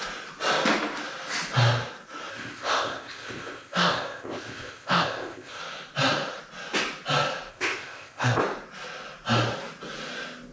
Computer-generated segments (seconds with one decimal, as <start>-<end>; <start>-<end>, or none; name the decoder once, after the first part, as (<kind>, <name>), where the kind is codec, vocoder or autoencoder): 2.3-5.6 (codec, ZipCodec); 7.5-8.4